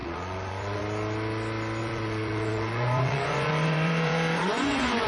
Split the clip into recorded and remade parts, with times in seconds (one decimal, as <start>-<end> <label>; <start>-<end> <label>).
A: 0.0-0.8 remade; 0.8-1.8 recorded; 1.8-5.1 remade